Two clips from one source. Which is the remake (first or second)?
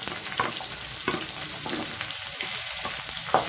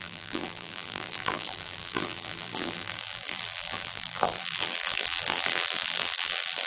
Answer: second